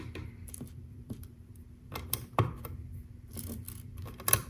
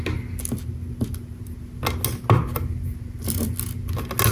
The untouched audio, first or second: second